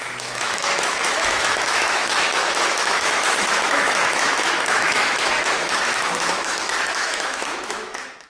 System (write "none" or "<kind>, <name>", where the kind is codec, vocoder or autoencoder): autoencoder, DAC-VAE